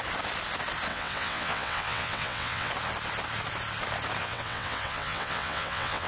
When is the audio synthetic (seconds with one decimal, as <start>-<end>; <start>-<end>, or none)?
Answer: 0.9-2.7; 4.2-6.1